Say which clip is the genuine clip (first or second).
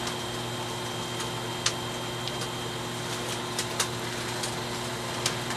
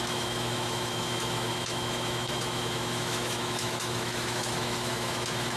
first